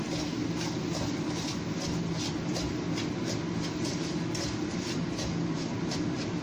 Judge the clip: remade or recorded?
recorded